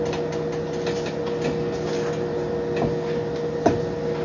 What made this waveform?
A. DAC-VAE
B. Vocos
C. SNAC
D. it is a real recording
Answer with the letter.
D